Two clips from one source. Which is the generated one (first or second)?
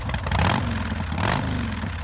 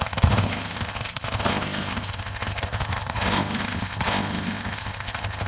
second